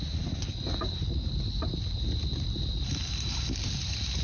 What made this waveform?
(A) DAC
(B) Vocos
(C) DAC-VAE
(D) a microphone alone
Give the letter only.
D